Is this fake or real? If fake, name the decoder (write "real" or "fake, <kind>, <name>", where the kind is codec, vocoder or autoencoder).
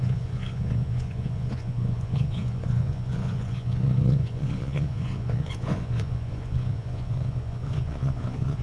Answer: fake, vocoder, Vocos